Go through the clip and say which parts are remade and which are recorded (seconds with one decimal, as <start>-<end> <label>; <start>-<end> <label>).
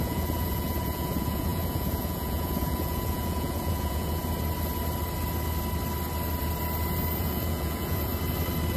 0.0-4.2 remade; 4.2-7.2 recorded; 7.2-8.1 remade; 8.1-8.8 recorded